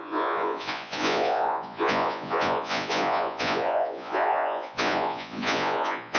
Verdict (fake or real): fake